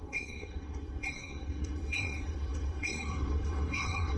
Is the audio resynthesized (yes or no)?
yes